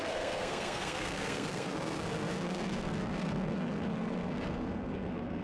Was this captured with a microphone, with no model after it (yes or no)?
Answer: no